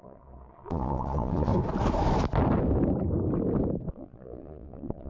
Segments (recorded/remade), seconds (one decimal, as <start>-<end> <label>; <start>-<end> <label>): 0.0-1.5 remade; 1.5-3.9 recorded; 3.9-5.1 remade